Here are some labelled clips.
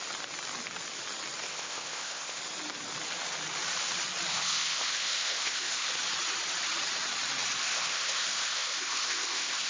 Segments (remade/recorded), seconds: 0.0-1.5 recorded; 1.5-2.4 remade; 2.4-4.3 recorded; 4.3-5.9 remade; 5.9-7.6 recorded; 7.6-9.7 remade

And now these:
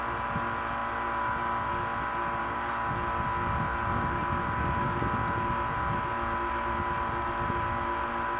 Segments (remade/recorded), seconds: 0.0-2.4 recorded; 2.4-2.9 remade; 2.9-8.4 recorded

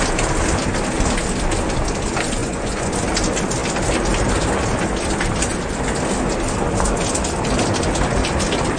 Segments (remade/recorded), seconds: 0.0-2.4 recorded; 2.4-2.9 remade; 2.9-8.8 recorded

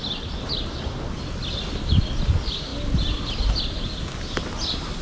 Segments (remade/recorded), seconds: 0.0-5.0 recorded